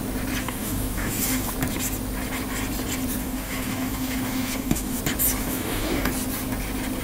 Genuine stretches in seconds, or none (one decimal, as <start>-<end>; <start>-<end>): 0.0-0.4; 1.5-3.2; 5.0-5.4; 6.1-7.0